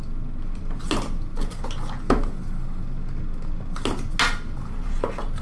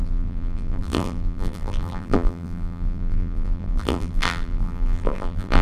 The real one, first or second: first